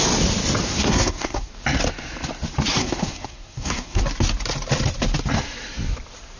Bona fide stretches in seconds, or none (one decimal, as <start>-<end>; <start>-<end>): 0.0-0.6; 1.5-2.8; 4.0-6.4